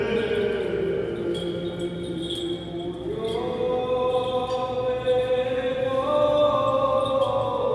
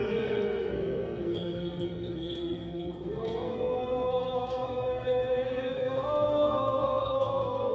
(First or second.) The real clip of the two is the first